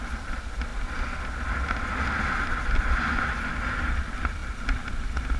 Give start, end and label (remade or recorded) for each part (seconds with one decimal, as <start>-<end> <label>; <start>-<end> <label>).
0.0-4.4 recorded; 4.4-4.9 remade; 4.9-5.4 recorded